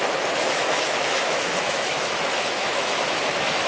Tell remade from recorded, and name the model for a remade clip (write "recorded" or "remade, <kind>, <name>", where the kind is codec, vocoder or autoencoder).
remade, autoencoder, DAC-VAE